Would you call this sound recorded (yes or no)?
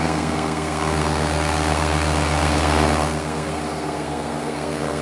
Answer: no